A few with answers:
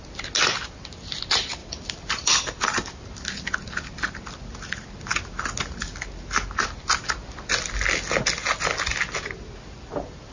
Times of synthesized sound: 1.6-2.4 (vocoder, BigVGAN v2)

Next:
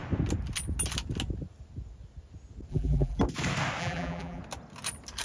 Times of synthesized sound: 2.7-3.2 (vocoder, BigVGAN v2); 3.8-4.4

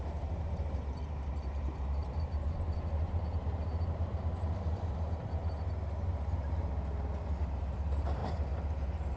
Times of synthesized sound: 0.0-5.4 (vocoder, BigVGAN v2); 7.6-9.2

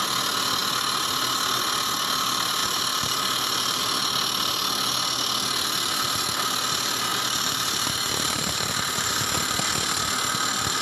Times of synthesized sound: 2.6-3.8 (vocoder, BigVGAN v2); 7.1-9.1

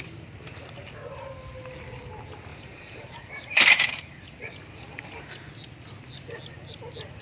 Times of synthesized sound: 2.5-5.3 (vocoder, BigVGAN v2)

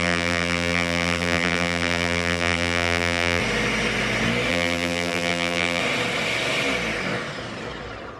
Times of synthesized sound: 0.0-3.4 (vocoder, BigVGAN v2); 4.5-5.8